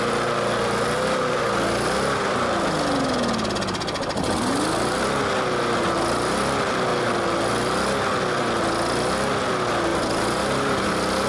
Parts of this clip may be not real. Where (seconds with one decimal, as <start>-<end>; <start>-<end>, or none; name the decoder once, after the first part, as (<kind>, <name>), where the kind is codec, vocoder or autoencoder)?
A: 9.9-10.9 (vocoder, BigVGAN v2)